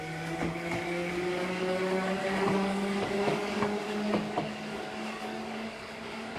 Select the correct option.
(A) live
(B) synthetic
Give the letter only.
B